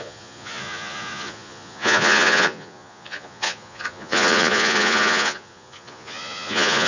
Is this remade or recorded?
remade